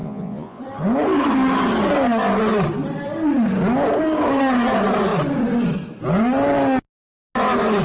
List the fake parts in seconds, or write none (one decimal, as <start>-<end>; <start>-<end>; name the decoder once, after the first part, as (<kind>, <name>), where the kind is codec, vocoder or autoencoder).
0.0-0.6 (vocoder, Vocos)